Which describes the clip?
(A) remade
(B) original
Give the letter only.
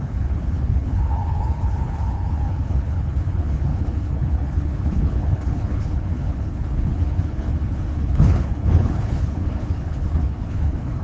A